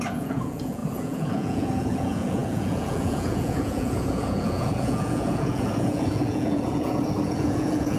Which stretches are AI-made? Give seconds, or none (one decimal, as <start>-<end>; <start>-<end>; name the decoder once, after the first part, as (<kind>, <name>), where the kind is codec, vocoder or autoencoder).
0.0-8.0 (vocoder, Vocos)